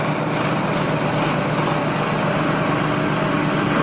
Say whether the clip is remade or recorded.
recorded